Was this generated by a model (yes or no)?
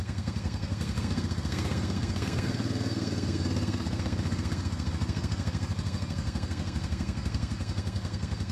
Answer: yes